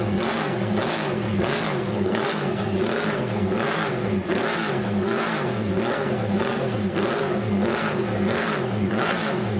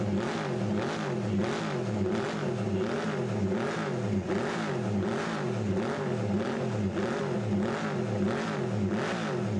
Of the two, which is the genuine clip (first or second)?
second